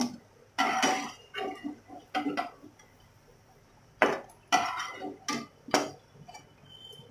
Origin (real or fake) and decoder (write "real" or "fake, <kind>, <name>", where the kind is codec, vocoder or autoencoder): real